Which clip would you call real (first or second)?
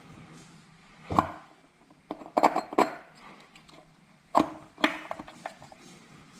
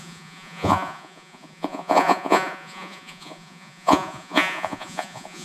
first